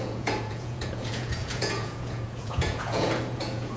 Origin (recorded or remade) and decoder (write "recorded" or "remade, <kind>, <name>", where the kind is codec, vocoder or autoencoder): remade, vocoder, Vocos